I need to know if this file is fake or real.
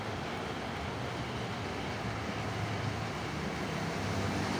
real